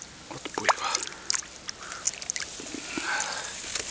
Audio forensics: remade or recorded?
recorded